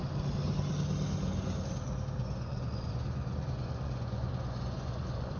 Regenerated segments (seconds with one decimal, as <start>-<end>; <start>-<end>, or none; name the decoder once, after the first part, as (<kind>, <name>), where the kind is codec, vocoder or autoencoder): 2.2-5.4 (vocoder, Vocos)